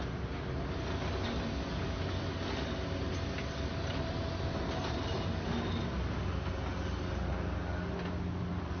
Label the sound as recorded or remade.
recorded